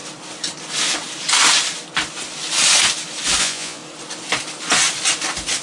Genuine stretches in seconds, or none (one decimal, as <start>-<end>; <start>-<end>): 0.0-3.4; 3.8-5.6